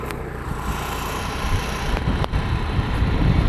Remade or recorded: remade